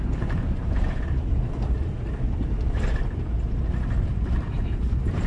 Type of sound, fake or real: fake